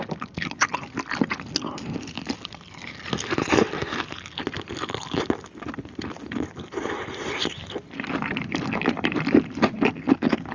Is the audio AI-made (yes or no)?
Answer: no